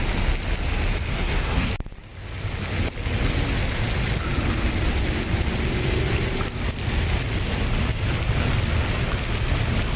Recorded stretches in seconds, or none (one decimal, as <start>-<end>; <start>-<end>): 0.0-1.1; 1.7-10.0

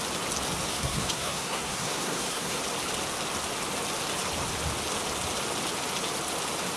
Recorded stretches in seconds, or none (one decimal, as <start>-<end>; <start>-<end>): 0.0-0.7; 2.6-6.8

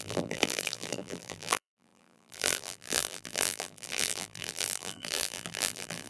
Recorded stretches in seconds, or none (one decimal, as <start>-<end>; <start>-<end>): none

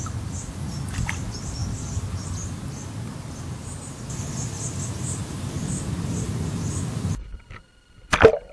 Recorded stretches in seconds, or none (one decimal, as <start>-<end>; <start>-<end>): 0.0-8.5

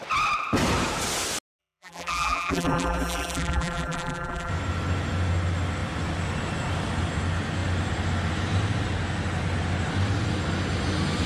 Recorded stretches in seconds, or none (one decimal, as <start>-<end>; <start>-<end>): 0.0-1.6; 4.5-11.3

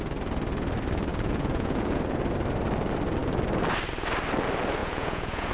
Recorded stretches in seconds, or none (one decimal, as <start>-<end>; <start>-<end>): 0.0-1.1; 2.0-4.8

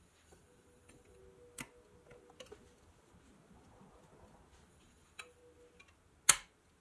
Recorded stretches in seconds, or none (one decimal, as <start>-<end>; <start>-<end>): 1.2-4.7; 5.4-6.8

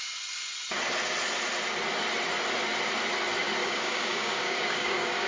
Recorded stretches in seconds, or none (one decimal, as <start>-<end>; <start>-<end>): 0.0-3.6